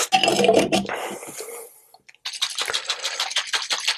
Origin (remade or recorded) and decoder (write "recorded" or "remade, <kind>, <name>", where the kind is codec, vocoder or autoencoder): recorded